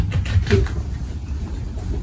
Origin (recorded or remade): recorded